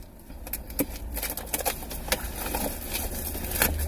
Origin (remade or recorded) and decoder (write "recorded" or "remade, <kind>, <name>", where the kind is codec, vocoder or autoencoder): recorded